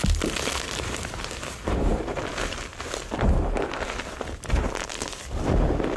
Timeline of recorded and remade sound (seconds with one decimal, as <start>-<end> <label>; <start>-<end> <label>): 0.0-6.0 recorded